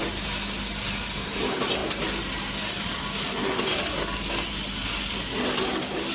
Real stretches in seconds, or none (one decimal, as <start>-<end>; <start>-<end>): 0.0-6.1